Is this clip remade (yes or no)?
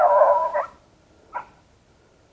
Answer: yes